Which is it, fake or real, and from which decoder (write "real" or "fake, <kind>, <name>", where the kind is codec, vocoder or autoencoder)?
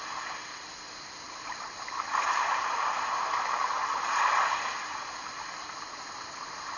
real